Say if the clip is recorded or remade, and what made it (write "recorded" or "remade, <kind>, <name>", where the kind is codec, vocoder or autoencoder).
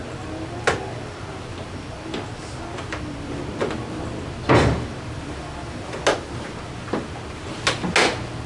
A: recorded